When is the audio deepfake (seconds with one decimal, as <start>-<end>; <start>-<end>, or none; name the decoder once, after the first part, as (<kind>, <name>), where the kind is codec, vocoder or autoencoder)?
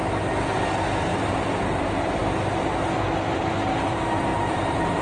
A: 1.0-2.2 (vocoder, BigVGAN v2); 3.8-5.0